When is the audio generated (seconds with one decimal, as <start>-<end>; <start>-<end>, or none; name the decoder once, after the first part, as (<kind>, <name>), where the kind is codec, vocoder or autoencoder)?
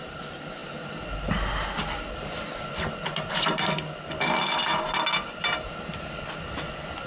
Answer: none